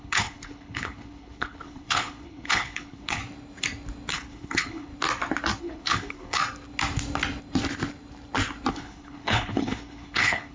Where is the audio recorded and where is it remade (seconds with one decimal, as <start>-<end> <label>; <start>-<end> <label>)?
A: 0.0-3.2 remade; 3.2-4.1 recorded; 4.1-4.9 remade; 4.9-5.6 recorded; 5.6-6.4 remade; 6.4-8.7 recorded; 8.7-10.5 remade